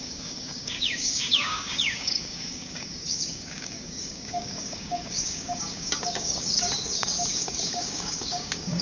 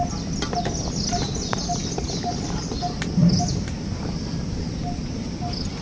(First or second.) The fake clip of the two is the first